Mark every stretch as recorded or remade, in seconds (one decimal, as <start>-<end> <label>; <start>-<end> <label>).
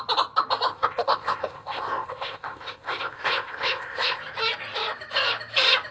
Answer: 0.0-0.7 recorded; 0.7-4.2 remade; 4.2-5.9 recorded